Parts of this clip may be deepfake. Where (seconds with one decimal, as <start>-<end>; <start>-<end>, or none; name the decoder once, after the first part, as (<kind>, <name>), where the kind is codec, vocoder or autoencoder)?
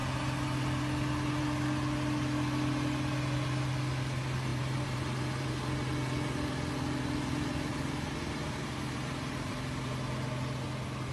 4.5-5.9 (vocoder, BigVGAN v2); 7.7-9.9